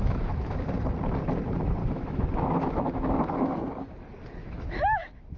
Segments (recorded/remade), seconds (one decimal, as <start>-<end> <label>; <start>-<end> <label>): 0.0-0.7 remade; 0.7-1.8 recorded; 1.8-3.5 remade; 3.5-4.4 recorded; 4.4-5.4 remade